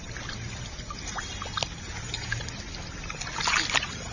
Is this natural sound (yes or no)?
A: yes